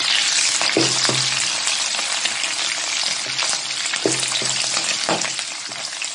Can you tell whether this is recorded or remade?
recorded